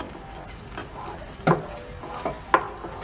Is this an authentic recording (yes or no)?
yes